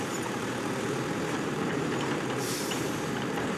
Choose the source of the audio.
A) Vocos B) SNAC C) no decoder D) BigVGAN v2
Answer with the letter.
D